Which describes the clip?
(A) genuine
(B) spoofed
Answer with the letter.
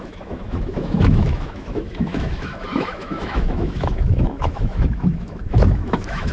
B